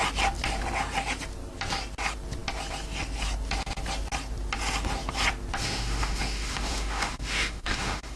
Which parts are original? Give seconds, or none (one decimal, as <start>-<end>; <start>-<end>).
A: 0.0-5.6